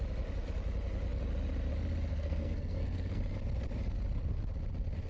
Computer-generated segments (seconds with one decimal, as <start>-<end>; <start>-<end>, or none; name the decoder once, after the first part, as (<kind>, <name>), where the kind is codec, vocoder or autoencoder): 2.1-3.2 (codec, SNAC)